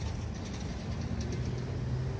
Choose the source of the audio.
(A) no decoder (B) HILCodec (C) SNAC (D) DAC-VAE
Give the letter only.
A